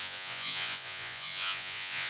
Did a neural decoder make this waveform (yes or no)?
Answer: yes